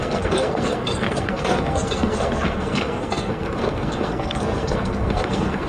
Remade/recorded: remade